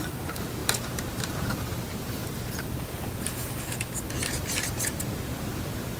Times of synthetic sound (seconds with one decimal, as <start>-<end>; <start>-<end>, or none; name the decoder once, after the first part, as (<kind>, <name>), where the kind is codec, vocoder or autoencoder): 0.0-2.2 (vocoder, BigVGAN v2)